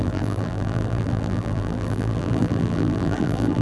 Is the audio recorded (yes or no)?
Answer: no